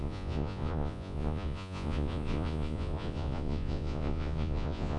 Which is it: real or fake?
fake